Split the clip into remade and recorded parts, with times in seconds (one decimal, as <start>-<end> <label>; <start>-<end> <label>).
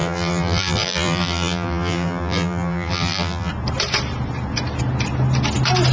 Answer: 0.0-3.5 remade; 3.5-5.9 recorded